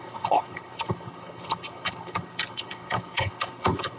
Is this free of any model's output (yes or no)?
no